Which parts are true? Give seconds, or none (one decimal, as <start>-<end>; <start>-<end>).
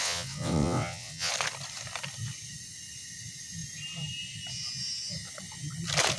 1.3-6.2